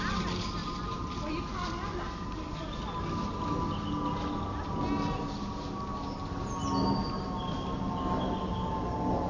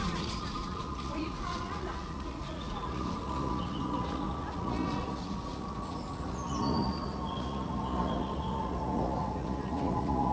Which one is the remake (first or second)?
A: second